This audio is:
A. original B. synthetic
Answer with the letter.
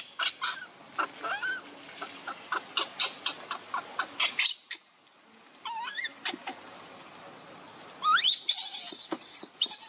A